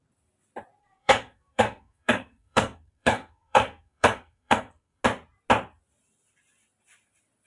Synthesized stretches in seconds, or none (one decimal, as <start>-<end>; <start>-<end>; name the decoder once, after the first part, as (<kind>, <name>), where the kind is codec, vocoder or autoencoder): 0.8-5.0 (codec, SNAC)